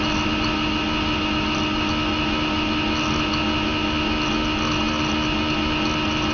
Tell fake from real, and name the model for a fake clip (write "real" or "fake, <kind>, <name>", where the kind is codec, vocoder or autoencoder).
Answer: real